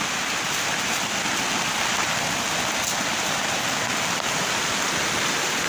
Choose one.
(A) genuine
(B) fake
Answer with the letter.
A